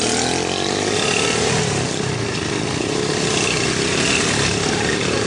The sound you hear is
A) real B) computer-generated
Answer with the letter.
A